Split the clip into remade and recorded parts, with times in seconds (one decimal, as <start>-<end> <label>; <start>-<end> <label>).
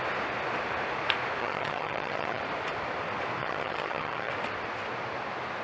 0.0-1.4 recorded; 1.4-2.4 remade; 2.4-3.4 recorded; 3.4-4.3 remade; 4.3-5.6 recorded